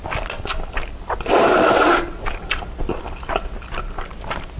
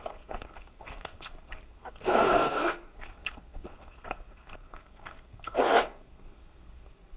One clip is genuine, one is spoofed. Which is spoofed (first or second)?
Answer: second